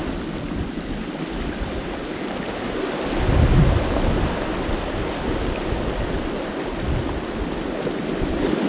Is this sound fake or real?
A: real